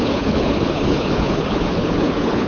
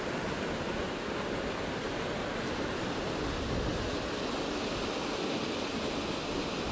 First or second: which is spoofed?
first